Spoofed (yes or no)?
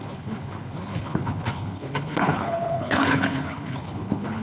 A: yes